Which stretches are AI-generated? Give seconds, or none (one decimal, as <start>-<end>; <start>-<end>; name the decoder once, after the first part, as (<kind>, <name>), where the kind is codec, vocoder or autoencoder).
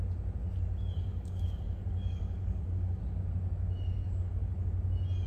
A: 1.1-3.0 (codec, DAC); 4.0-4.5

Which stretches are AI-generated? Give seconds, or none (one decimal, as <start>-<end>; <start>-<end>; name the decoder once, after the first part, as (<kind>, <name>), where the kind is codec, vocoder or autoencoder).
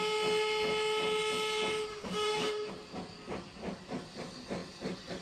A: 1.9-2.7 (codec, DAC)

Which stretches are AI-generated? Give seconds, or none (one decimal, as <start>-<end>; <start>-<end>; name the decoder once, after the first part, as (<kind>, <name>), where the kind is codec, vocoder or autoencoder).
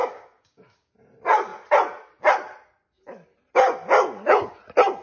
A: 0.0-0.9 (codec, DAC)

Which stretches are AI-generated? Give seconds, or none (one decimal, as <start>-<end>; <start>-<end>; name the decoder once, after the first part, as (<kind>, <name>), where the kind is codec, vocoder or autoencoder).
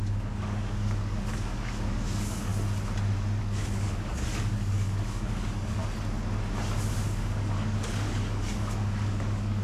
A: 0.0-2.5 (codec, DAC); 3.4-5.8; 6.9-9.6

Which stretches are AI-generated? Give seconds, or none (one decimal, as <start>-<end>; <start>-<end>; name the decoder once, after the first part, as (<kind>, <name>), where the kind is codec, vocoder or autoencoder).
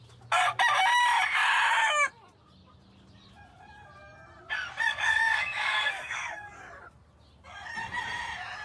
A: 4.9-6.6 (codec, DAC)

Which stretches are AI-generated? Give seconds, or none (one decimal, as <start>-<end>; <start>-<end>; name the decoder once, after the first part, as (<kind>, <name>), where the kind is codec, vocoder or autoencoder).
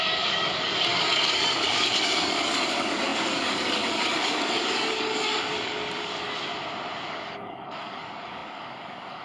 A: 0.0-6.5 (codec, DAC); 7.1-9.2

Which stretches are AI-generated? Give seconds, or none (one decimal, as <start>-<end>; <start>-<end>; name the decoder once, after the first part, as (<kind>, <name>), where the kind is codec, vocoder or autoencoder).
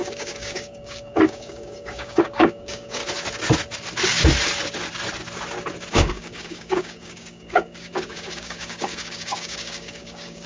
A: 0.0-3.0 (codec, DAC); 5.9-10.5